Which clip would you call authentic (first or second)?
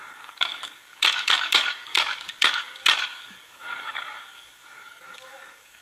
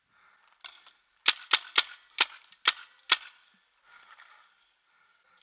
second